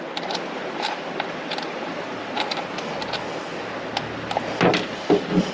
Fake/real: real